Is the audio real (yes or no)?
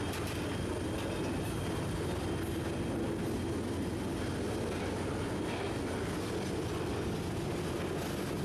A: yes